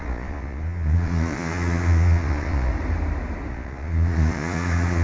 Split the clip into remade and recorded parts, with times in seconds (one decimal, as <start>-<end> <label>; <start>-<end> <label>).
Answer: 0.0-2.7 remade; 2.7-3.5 recorded; 3.5-5.0 remade